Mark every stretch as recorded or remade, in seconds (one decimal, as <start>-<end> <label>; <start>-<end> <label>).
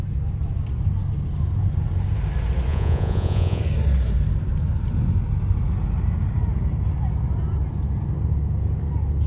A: 0.0-2.7 recorded; 2.7-3.6 remade; 3.6-9.3 recorded